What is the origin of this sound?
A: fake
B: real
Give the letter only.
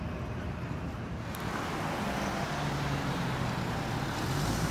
B